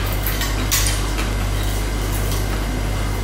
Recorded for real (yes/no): yes